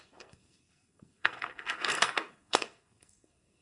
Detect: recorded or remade remade